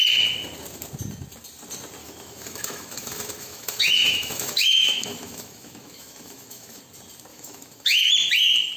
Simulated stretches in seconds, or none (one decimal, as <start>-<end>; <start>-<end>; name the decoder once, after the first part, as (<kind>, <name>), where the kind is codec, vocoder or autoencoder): 2.0-6.8 (autoencoder, DAC-VAE); 7.3-8.1